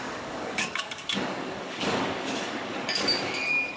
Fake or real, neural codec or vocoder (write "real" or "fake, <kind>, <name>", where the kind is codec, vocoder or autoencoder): fake, codec, DAC